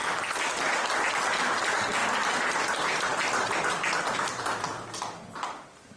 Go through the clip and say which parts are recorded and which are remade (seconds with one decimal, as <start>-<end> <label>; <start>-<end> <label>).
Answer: 0.0-6.0 recorded